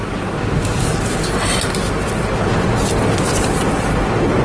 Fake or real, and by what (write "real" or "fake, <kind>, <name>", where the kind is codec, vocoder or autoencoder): real